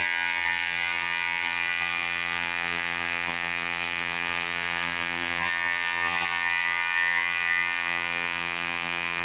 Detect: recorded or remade remade